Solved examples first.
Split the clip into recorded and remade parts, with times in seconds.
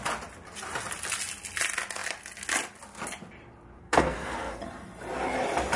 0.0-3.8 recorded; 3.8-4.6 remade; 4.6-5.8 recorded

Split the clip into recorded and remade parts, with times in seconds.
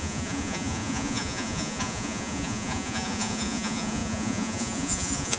0.0-5.4 remade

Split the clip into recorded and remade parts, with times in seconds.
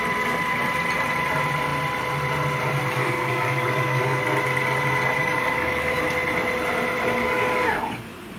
0.0-3.0 recorded; 3.0-4.2 remade; 4.2-5.2 recorded; 5.2-6.0 remade; 6.0-7.2 recorded; 7.2-8.0 remade; 8.0-8.4 recorded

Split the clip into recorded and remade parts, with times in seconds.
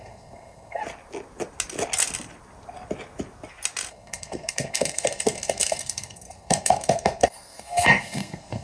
0.0-0.8 remade; 0.8-3.9 recorded; 3.9-8.6 remade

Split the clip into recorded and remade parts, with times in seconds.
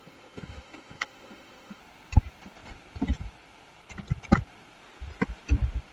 0.0-1.8 remade; 1.8-5.9 recorded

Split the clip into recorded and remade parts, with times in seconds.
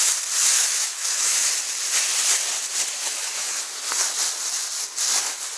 0.0-0.4 recorded; 0.4-1.5 remade; 1.5-3.0 recorded; 3.0-3.8 remade; 3.8-5.6 recorded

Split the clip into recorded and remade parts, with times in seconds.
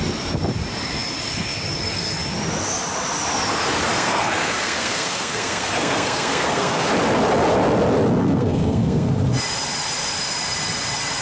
0.0-3.9 recorded; 3.9-6.9 remade; 6.9-8.2 recorded; 8.2-9.1 remade; 9.1-11.2 recorded